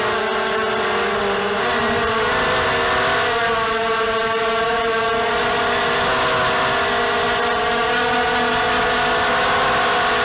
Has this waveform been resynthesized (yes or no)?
no